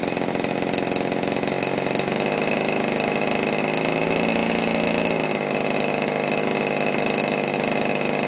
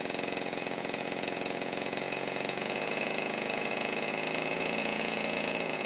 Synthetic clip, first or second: second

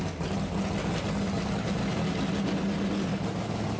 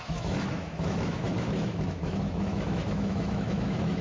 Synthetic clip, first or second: second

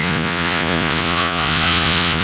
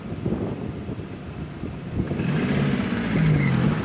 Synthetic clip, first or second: first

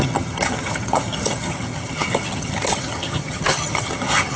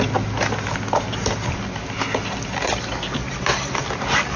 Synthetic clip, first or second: first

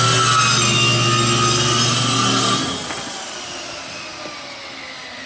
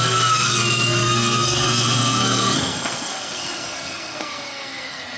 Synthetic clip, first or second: second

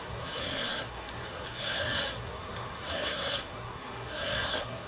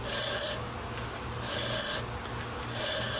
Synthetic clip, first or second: first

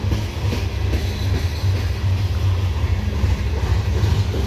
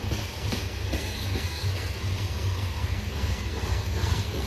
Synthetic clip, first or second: second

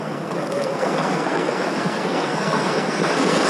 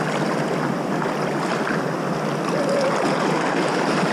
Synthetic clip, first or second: first